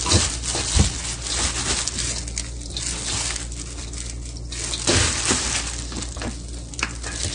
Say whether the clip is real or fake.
real